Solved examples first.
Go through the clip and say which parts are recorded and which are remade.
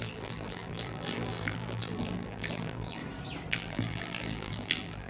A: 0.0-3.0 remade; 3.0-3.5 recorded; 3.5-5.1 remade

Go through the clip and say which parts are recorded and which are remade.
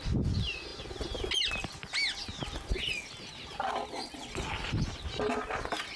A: 0.0-6.0 recorded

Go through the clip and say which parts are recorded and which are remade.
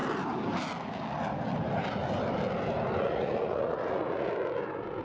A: 0.0-3.0 recorded; 3.0-4.3 remade; 4.3-5.0 recorded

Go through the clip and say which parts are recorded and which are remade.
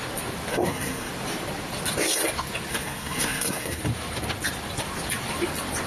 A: 0.0-0.5 recorded; 0.5-1.1 remade; 1.1-2.7 recorded; 2.7-3.8 remade; 3.8-5.9 recorded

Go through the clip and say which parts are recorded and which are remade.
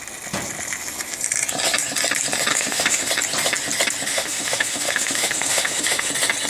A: 0.0-2.5 recorded; 2.5-3.1 remade; 3.1-4.1 recorded; 4.1-6.1 remade; 6.1-6.5 recorded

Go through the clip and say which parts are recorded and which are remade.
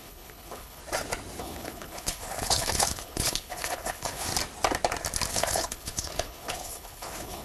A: 0.0-0.8 remade; 0.8-1.4 recorded; 1.4-4.3 remade; 4.3-5.3 recorded; 5.3-7.4 remade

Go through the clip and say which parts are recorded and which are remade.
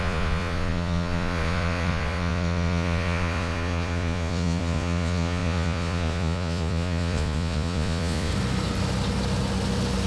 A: 0.0-8.3 remade; 8.3-10.1 recorded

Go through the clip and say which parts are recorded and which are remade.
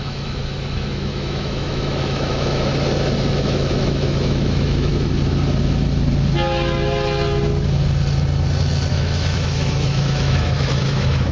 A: 0.0-2.7 remade; 2.7-3.3 recorded; 3.3-4.9 remade; 4.9-8.9 recorded; 8.9-11.3 remade